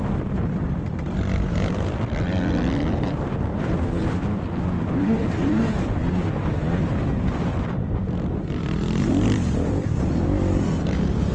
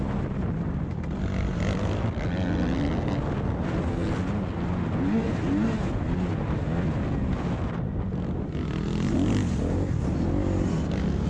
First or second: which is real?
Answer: second